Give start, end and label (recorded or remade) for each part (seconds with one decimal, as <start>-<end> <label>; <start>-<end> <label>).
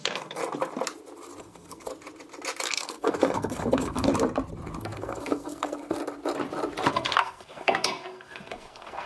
0.0-0.4 remade; 0.4-1.4 recorded; 1.4-1.9 remade; 1.9-2.7 recorded; 2.7-4.1 remade; 4.1-4.8 recorded; 4.8-6.0 remade; 6.0-6.9 recorded; 6.9-9.1 remade